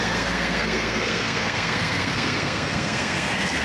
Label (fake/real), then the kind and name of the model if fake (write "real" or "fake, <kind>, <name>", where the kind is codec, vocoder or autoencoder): fake, codec, SNAC